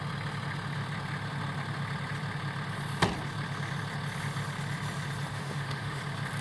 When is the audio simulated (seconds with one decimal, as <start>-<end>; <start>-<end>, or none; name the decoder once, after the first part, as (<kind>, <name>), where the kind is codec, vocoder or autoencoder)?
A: 5.3-6.0 (autoencoder, DAC-VAE)